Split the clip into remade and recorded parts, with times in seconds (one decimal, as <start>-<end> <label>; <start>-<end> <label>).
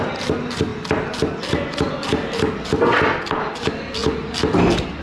0.0-5.0 recorded